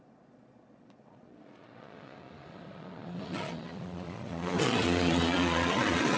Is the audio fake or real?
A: fake